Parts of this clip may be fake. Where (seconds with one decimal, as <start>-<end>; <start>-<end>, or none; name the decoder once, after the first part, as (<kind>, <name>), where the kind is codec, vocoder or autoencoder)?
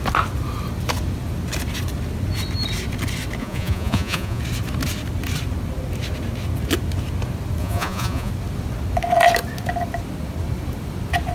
3.4-4.4 (vocoder, Vocos); 7.6-8.3